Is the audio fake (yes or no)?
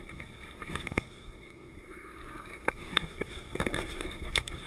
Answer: yes